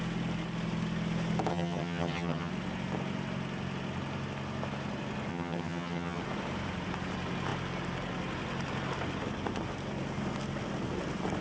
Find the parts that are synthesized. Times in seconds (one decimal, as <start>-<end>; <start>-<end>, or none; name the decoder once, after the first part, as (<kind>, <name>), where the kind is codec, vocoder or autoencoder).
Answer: 1.5-2.5 (vocoder, HiFi-GAN); 5.3-6.2